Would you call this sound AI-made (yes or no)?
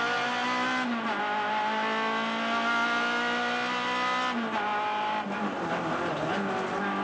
no